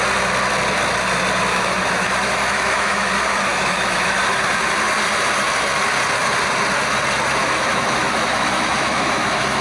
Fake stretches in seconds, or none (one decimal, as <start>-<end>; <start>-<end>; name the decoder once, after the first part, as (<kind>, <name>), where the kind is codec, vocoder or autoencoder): 1.5-3.1 (autoencoder, DAC-VAE); 3.5-4.2; 7.4-9.6